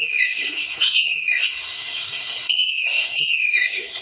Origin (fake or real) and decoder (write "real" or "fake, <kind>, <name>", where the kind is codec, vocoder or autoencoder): fake, codec, SNAC